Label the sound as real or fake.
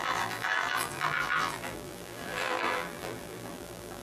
fake